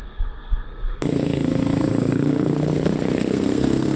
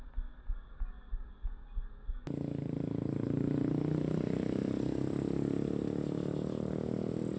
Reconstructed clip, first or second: first